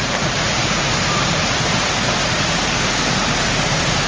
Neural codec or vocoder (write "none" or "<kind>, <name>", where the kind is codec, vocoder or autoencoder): vocoder, BigVGAN v2